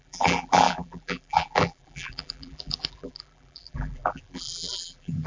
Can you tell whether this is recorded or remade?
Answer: remade